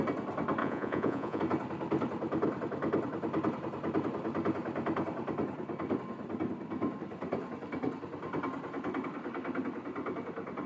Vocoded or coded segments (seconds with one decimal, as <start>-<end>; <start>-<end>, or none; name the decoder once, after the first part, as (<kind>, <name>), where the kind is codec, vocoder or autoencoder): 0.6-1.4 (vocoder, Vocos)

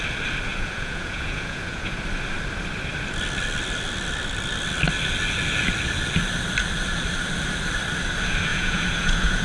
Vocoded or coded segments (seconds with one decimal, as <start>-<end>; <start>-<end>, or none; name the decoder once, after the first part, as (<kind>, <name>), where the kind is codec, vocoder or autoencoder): 0.5-2.0 (vocoder, Vocos); 8.5-9.4

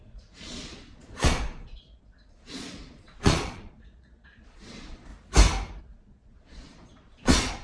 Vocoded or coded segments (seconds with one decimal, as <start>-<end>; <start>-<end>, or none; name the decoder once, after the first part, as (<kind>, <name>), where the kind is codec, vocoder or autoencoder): 0.0-5.1 (vocoder, Vocos); 5.8-7.6

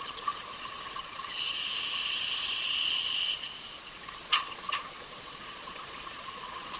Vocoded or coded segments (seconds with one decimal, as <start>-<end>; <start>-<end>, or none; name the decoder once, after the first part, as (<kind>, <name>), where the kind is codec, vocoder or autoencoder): 0.0-1.7 (vocoder, Vocos); 2.4-6.8

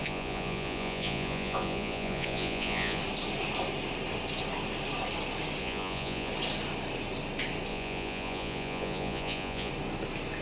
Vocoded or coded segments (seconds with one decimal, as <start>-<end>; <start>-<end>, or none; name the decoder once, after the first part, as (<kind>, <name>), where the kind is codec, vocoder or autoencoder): 0.0-3.0 (vocoder, Vocos); 5.6-6.3; 7.7-9.7

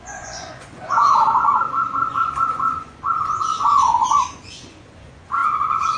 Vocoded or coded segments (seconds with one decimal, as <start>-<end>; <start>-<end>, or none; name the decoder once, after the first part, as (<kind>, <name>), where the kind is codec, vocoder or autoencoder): 0.0-6.0 (vocoder, Vocos)

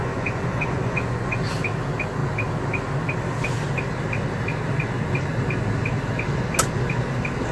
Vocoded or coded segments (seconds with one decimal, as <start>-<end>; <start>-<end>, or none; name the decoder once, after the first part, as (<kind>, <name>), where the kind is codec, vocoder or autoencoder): 0.0-1.4 (vocoder, Vocos)

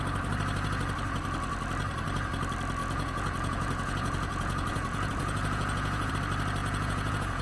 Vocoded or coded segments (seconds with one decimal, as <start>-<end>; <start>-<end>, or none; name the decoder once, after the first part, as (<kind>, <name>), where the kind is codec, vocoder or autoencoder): 2.8-6.1 (vocoder, Vocos); 6.6-7.4